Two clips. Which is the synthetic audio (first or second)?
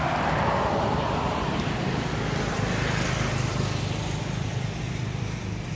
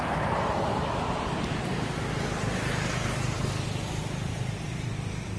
second